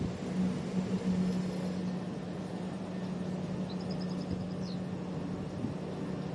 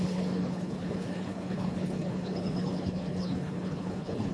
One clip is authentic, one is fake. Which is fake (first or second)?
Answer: second